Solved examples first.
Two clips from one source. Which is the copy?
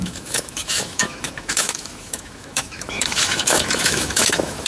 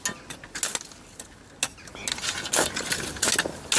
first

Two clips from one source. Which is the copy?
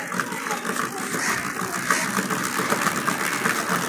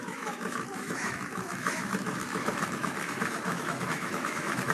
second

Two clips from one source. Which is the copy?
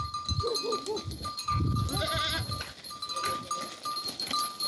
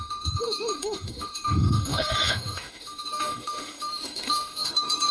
second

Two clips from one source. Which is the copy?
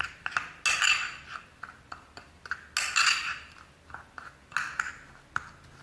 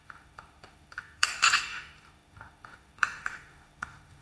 second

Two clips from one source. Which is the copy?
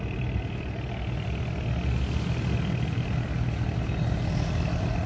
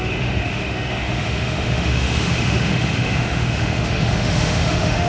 second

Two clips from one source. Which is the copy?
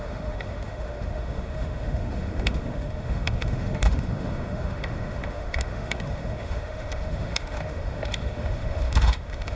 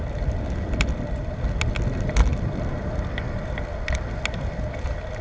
first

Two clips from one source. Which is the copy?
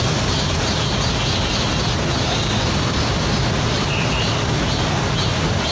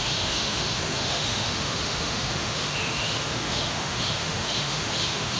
second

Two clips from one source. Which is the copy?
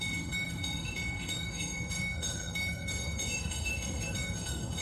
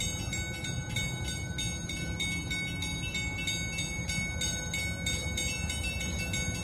first